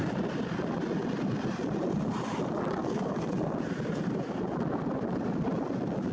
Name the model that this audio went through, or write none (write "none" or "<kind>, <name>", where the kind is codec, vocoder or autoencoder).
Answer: none